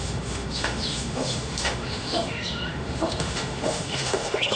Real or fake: fake